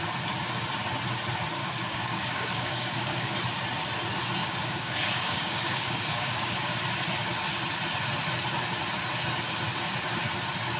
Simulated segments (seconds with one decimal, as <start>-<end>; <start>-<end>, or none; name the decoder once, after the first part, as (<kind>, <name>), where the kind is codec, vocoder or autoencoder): 1.6-3.3 (codec, DAC); 4.4-6.8